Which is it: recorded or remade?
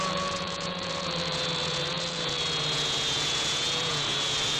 remade